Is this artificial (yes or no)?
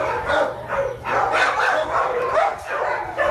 no